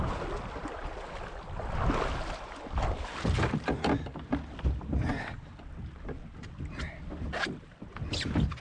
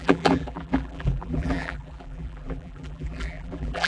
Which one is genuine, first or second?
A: first